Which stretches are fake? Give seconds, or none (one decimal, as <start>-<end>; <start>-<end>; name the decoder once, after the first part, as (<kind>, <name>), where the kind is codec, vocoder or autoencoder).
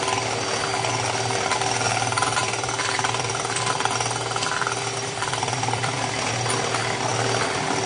2.4-6.3 (vocoder, BigVGAN v2); 7.1-7.9